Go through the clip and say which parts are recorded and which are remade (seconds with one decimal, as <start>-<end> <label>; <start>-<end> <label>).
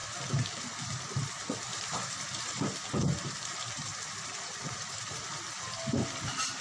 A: 0.0-1.7 recorded; 1.7-2.6 remade; 2.6-6.6 recorded